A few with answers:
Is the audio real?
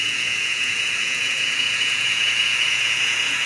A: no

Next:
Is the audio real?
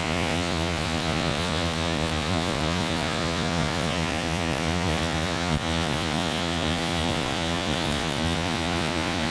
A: no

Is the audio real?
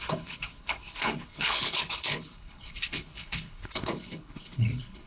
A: no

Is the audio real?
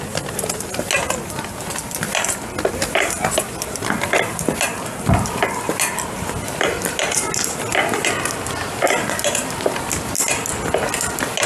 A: yes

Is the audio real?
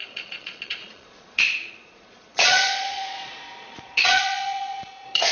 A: no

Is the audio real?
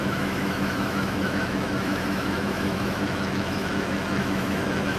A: no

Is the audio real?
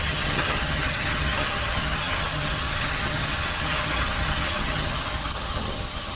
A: no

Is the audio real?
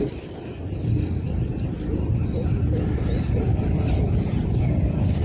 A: no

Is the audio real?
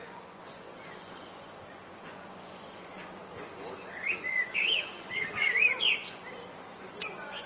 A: no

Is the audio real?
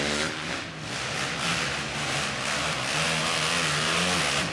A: yes